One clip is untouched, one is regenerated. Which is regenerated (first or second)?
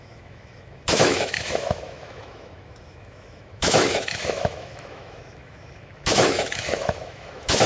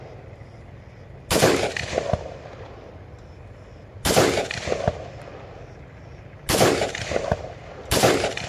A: first